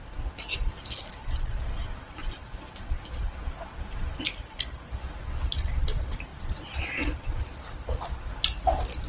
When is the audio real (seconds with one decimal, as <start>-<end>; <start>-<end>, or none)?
0.0-9.1